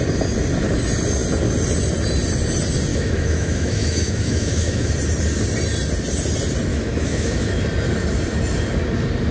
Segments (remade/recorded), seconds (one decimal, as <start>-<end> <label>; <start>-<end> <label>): 0.0-2.9 recorded; 2.9-4.9 remade; 4.9-6.7 recorded; 6.7-7.6 remade; 7.6-9.3 recorded